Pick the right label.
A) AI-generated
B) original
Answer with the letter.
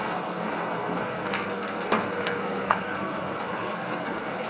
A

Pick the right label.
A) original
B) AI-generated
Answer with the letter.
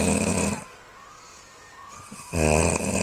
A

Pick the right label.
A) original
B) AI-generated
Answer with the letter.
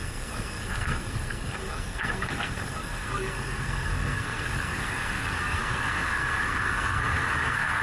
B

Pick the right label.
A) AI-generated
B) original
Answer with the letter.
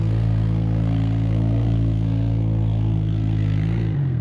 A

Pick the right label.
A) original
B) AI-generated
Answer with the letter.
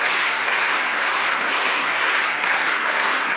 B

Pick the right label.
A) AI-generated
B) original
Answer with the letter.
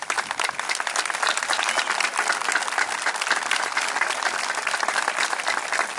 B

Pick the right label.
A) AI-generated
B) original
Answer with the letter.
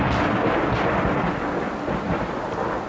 B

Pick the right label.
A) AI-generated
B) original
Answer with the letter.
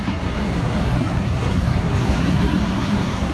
A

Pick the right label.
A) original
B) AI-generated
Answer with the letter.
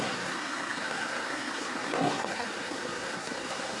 B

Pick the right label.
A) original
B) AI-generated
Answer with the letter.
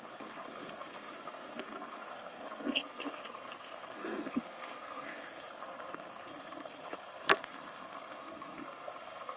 B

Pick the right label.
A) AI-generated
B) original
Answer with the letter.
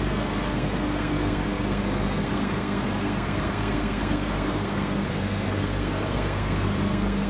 A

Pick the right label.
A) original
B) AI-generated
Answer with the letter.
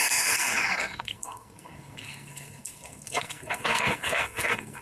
B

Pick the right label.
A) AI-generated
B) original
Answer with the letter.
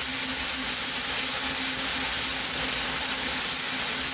B